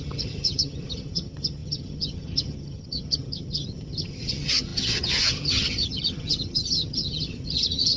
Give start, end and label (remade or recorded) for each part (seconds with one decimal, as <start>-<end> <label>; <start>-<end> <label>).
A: 0.0-8.0 remade